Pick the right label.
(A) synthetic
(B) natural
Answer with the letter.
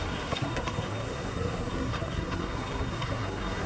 A